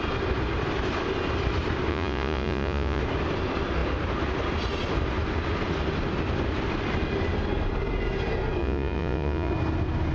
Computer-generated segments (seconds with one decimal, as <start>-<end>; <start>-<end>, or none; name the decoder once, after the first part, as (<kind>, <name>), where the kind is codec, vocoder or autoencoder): 1.9-3.0 (vocoder, Vocos); 8.6-9.5